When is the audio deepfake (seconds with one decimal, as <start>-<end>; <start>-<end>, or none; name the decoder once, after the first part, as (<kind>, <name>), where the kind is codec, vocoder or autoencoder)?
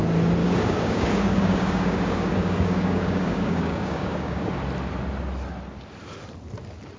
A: 0.4-4.5 (codec, DAC)